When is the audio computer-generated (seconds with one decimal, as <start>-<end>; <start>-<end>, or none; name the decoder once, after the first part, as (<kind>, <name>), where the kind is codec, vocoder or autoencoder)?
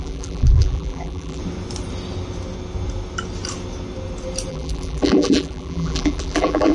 0.0-1.4 (vocoder, BigVGAN v2); 4.5-6.7